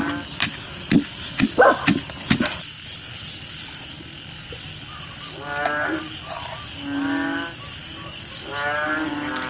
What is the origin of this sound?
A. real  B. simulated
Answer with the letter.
A